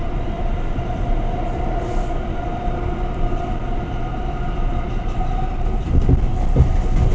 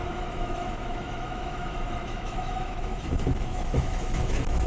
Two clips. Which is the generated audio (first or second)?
second